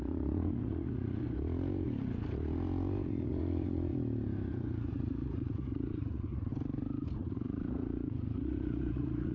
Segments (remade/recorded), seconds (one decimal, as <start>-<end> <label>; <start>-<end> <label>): 0.0-1.2 remade; 1.2-3.1 recorded; 3.1-3.9 remade; 3.9-4.9 recorded; 4.9-6.5 remade; 6.5-7.2 recorded; 7.2-9.3 remade